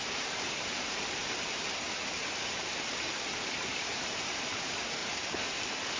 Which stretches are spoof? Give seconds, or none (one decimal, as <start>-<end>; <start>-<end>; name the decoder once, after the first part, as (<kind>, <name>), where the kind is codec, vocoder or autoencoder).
0.0-5.0 (vocoder, BigVGAN v2)